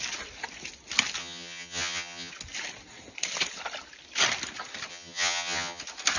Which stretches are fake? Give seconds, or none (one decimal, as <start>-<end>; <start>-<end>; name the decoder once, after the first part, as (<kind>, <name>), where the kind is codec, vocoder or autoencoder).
1.2-2.3 (vocoder, HiFi-GAN); 4.9-5.8